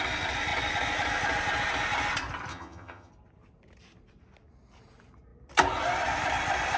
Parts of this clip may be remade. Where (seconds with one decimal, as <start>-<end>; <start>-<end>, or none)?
2.5-3.1